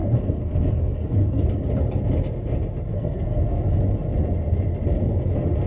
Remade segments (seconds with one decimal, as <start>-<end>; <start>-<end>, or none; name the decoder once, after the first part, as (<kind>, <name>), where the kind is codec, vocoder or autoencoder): 0.0-1.4 (codec, SNAC); 2.9-3.6